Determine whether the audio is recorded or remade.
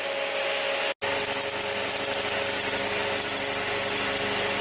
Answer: recorded